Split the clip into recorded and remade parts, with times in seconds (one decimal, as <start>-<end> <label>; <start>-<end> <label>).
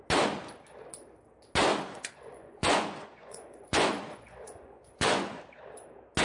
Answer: 0.0-1.7 recorded; 1.7-5.4 remade; 5.4-6.2 recorded